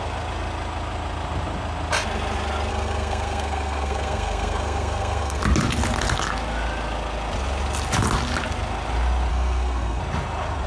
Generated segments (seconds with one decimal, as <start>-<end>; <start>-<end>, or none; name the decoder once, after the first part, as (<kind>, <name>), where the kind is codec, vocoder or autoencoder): 2.7-5.4 (codec, SNAC); 9.3-10.0